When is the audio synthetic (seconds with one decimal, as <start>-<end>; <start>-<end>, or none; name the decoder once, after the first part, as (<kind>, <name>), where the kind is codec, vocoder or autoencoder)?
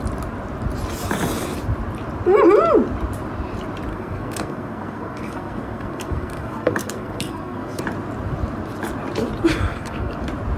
3.9-7.8 (codec, SNAC); 9.5-10.2